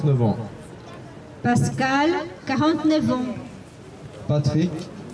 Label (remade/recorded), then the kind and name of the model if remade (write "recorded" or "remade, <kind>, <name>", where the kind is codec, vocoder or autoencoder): recorded